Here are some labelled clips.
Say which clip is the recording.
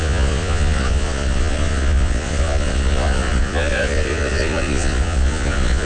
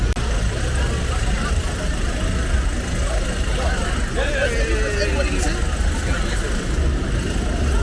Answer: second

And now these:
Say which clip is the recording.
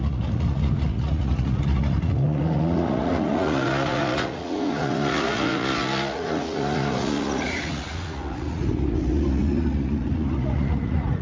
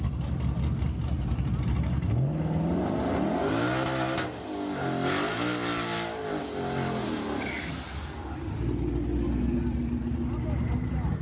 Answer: second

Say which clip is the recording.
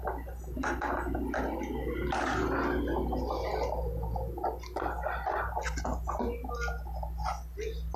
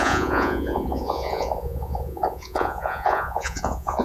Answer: first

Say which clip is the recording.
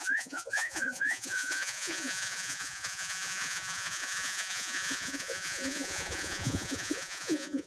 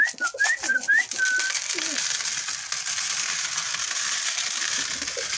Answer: second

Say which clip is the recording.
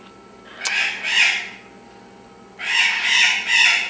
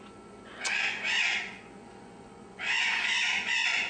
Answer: first